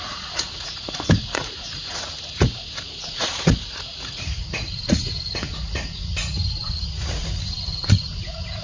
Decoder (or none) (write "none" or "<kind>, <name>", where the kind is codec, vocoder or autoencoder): vocoder, Vocos